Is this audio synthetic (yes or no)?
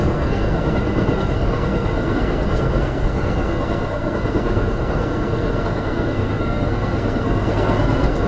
yes